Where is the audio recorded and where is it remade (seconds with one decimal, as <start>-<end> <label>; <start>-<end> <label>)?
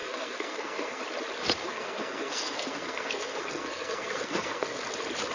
0.0-1.0 remade; 1.0-1.6 recorded; 1.6-4.8 remade; 4.8-5.3 recorded